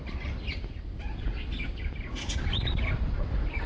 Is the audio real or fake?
real